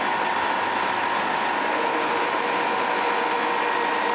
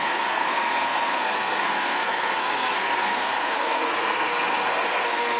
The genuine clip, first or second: first